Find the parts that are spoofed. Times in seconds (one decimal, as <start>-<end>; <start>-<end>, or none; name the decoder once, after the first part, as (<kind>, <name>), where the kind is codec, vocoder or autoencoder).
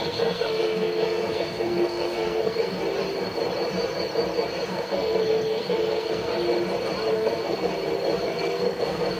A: 0.0-2.8 (codec, SNAC); 4.7-6.3; 7.1-7.7; 8.2-9.2